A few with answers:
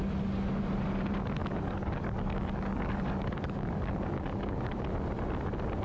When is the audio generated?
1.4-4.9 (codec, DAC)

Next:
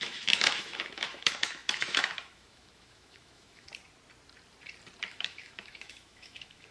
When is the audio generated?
0.0-3.7 (autoencoder, DAC-VAE); 5.1-6.7

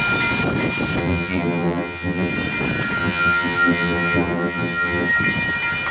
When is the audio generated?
1.0-2.3 (vocoder, BigVGAN v2); 3.0-5.1

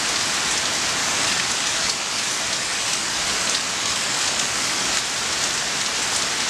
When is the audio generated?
1.0-4.9 (codec, DAC)

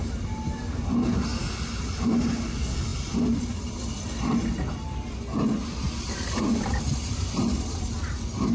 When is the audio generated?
none

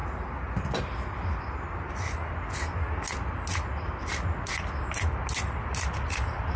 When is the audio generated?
none

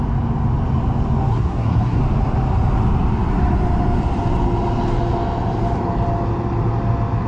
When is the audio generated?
1.3-2.0 (codec, SNAC)